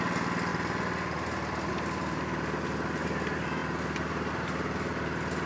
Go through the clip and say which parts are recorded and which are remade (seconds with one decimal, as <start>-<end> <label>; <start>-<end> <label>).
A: 0.0-5.5 recorded